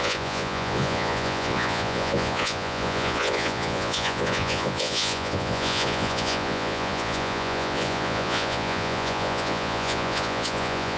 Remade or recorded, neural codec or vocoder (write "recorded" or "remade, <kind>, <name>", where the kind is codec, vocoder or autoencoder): remade, vocoder, Vocos